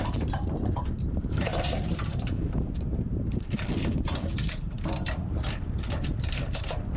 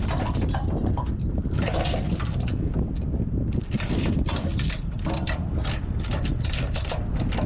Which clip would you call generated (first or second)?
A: first